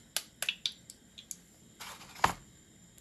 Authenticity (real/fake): real